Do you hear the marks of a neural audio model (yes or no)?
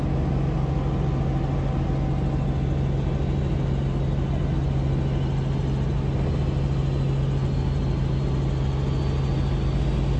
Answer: no